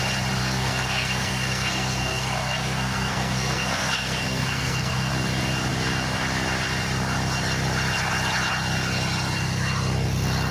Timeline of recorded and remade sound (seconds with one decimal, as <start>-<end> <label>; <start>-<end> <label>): 0.0-0.4 recorded; 0.4-5.1 remade; 5.1-10.5 recorded